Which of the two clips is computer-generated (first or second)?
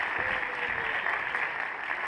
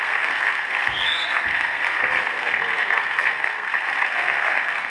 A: second